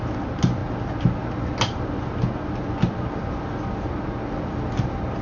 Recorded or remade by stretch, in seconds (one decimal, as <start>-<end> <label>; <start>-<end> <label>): 0.0-5.2 recorded